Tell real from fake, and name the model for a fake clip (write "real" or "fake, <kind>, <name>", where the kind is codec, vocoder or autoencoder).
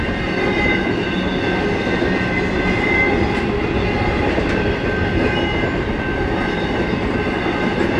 real